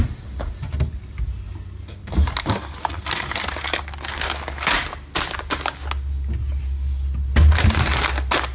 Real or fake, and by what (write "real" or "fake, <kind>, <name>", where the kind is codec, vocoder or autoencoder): real